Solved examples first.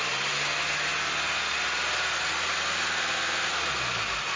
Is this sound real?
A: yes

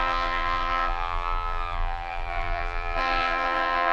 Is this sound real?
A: no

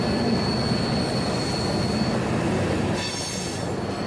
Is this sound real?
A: yes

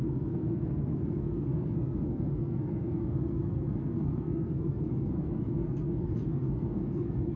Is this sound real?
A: no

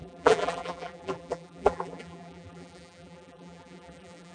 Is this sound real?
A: no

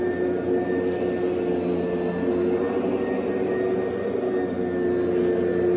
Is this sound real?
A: yes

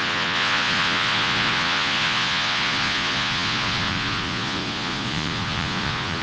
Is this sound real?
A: no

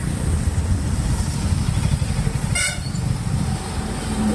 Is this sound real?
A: yes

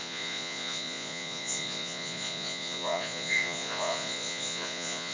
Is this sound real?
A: no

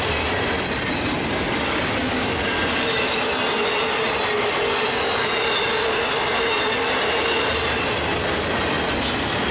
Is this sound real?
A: yes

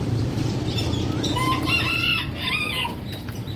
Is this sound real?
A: yes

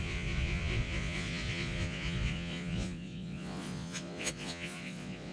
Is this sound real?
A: no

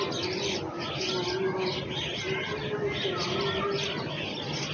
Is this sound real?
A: yes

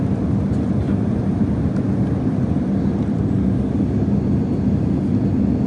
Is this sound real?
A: yes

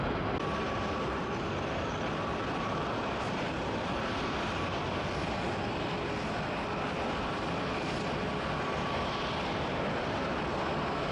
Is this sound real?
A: yes